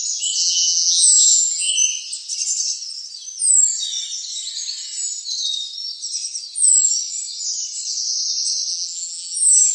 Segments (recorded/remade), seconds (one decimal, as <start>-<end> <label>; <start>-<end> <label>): 0.0-0.4 recorded; 0.4-1.7 remade; 1.7-8.7 recorded; 8.7-9.7 remade

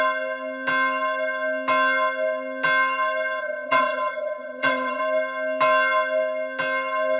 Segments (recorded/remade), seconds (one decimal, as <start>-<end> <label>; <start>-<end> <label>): 0.0-3.4 recorded; 3.4-5.0 remade; 5.0-7.2 recorded